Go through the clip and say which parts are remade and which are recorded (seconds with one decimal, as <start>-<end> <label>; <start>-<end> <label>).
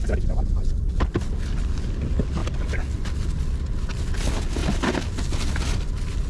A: 0.0-6.3 recorded